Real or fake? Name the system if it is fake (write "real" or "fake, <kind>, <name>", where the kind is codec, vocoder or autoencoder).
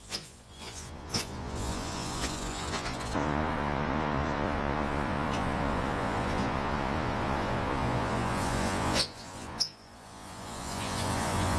fake, vocoder, Vocos